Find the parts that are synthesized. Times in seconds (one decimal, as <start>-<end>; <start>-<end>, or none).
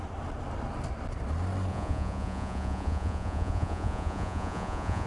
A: 1.7-5.1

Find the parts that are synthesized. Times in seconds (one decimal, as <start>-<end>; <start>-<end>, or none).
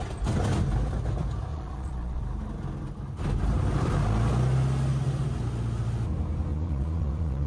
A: 1.5-2.2; 6.5-7.5